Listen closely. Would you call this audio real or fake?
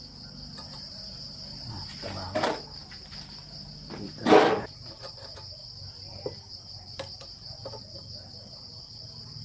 real